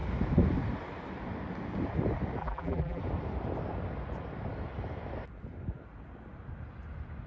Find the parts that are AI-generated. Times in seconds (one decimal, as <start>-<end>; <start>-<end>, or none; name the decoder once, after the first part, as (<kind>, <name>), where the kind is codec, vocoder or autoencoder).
2.4-3.0 (vocoder, BigVGAN v2)

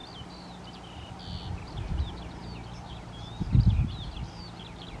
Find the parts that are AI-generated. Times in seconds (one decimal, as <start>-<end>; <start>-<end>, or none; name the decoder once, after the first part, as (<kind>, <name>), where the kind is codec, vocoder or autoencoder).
none

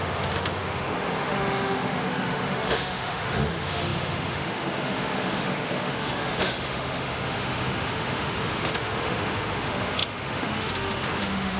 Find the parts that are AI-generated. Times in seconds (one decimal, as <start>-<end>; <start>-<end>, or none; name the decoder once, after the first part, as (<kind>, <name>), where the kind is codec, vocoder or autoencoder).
0.0-11.6 (autoencoder, DAC-VAE)

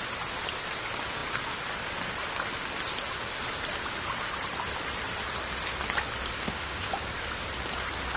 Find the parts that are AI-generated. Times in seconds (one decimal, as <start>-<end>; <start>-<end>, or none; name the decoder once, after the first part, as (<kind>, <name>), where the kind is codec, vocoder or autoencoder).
6.4-6.9 (autoencoder, DAC-VAE)